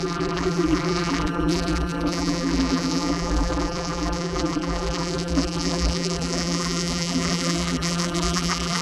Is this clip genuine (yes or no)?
no